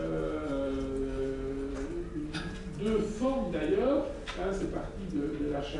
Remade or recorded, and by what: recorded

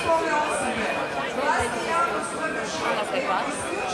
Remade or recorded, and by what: recorded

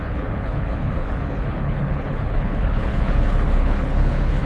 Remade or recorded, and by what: remade, codec, HILCodec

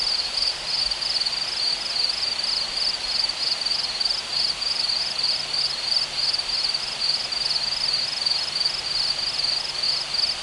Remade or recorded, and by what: recorded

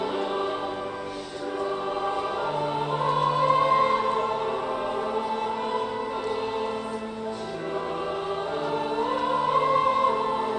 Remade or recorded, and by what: recorded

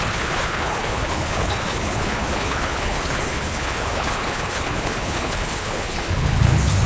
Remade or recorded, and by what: remade, codec, HILCodec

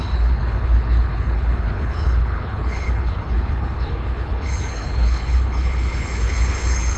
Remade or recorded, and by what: remade, codec, HILCodec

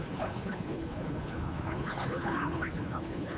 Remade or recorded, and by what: remade, codec, HILCodec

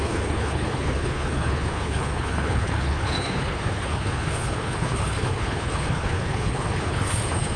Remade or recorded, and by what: remade, codec, HILCodec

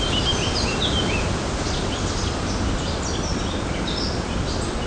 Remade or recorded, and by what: recorded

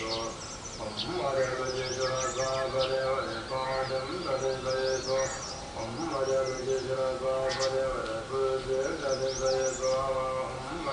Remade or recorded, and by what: recorded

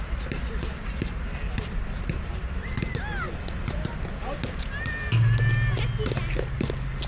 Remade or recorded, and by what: recorded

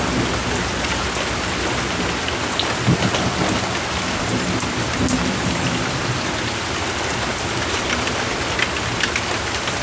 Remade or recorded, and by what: recorded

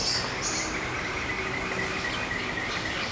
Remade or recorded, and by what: recorded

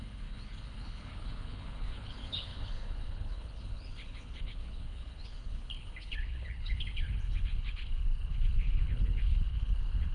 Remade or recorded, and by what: remade, codec, HILCodec